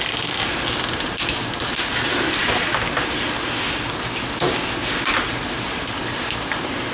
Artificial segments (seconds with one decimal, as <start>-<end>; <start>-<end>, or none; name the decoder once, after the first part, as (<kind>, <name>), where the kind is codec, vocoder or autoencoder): none